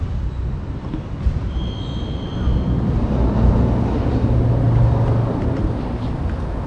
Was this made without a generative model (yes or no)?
yes